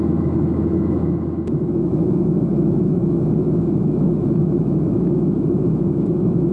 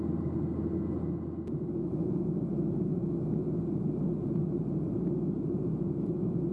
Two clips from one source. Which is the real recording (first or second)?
second